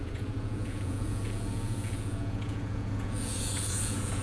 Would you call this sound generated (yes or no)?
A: yes